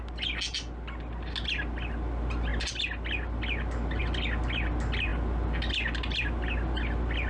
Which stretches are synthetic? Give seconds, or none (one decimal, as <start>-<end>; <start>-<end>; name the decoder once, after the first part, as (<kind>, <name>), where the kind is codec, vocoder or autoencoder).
none

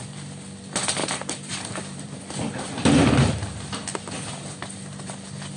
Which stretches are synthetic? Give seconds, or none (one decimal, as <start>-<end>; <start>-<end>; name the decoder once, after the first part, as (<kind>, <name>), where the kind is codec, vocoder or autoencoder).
1.0-2.2 (vocoder, BigVGAN v2)

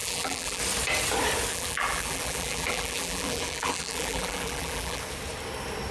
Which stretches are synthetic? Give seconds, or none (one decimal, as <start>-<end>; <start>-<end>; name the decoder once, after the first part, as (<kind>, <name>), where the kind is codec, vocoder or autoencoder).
0.0-0.6 (vocoder, BigVGAN v2); 1.5-5.0